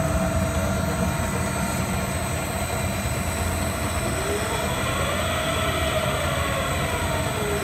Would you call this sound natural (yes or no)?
yes